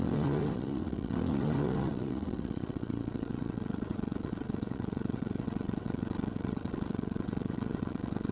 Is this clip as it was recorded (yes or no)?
no